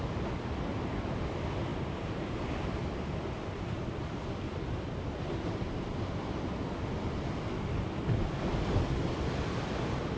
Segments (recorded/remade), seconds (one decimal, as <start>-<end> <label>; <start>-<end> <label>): 0.0-10.2 remade